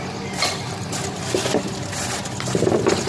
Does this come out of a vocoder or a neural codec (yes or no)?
no